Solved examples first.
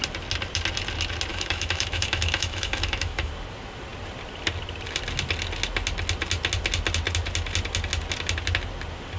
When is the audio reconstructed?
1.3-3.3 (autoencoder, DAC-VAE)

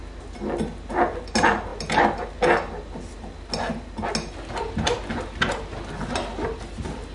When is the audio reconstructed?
none

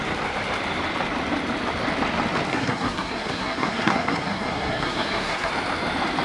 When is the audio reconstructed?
2.5-5.5 (codec, SNAC)

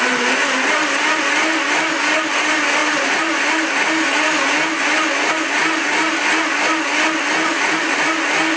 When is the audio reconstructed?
2.8-3.5 (vocoder, BigVGAN v2); 5.6-6.2; 7.5-8.1

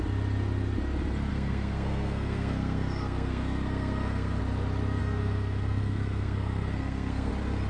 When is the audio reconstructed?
1.3-4.4 (codec, SNAC); 5.0-7.3

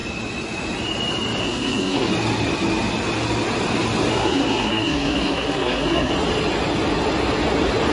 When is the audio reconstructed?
1.4-2.1 (codec, SNAC); 4.1-6.1